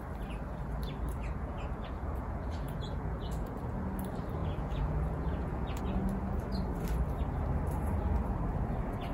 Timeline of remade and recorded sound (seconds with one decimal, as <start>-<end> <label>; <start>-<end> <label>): 0.0-1.2 recorded; 1.2-3.6 remade; 3.6-4.4 recorded; 4.4-5.8 remade; 5.8-9.1 recorded